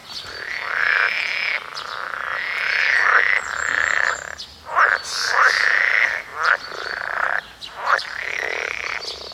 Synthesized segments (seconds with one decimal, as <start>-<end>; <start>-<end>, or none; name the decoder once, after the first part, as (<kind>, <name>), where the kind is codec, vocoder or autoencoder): 0.0-0.5 (vocoder, BigVGAN v2); 6.3-8.9